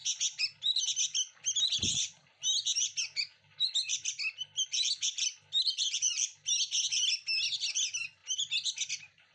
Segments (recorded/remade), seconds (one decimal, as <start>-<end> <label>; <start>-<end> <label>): 0.0-9.3 recorded